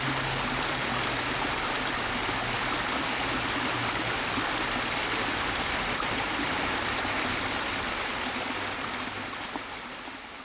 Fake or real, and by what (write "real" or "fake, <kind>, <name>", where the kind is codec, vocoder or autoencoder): real